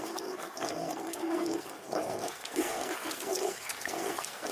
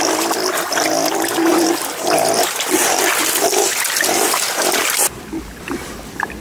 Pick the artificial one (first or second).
first